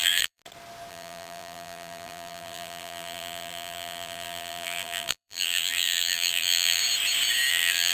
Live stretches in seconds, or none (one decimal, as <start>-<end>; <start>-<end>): 0.4-0.9; 6.8-7.5

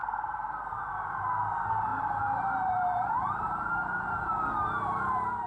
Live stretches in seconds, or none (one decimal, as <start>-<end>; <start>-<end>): 0.9-1.9; 4.3-5.5

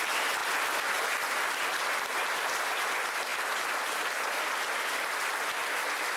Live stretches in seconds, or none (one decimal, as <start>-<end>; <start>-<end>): 0.0-6.2

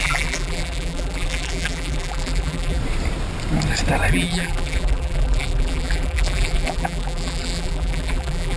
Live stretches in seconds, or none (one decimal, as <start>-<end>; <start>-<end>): 2.8-4.1

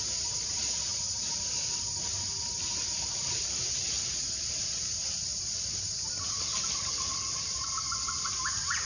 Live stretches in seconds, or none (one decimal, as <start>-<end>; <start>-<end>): 0.0-0.9; 1.8-8.8

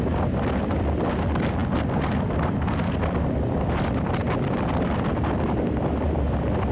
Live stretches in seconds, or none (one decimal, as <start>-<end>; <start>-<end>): none

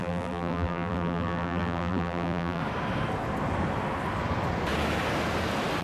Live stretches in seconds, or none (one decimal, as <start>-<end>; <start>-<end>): 2.6-5.8

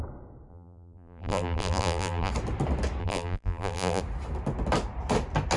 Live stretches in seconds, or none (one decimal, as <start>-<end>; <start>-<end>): 0.0-0.5; 2.3-3.0; 4.0-5.6